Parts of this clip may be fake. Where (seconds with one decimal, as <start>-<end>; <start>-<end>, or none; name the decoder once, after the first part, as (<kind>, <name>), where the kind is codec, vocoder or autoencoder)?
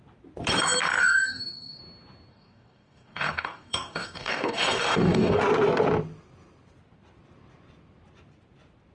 1.0-1.8 (codec, DAC); 2.3-5.4